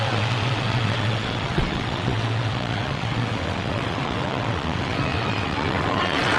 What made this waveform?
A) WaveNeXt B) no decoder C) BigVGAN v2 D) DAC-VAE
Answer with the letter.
A